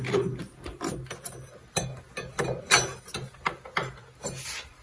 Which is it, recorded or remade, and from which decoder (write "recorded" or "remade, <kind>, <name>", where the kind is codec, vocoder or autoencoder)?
recorded